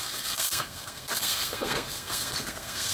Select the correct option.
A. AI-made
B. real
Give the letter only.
A